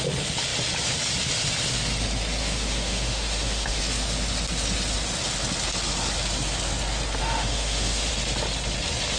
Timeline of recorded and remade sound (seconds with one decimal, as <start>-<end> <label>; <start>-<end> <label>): 0.0-2.4 recorded; 2.4-3.8 remade; 3.8-7.2 recorded; 7.2-8.1 remade; 8.1-9.2 recorded